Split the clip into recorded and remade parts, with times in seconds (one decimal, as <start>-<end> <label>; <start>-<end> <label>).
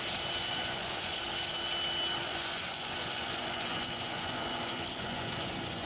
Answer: 0.0-0.4 recorded; 0.4-1.2 remade; 1.2-2.2 recorded; 2.2-5.9 remade